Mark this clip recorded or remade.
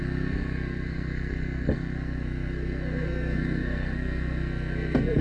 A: remade